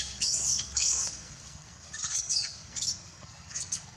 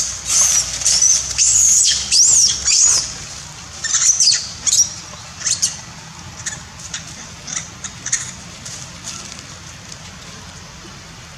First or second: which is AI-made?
first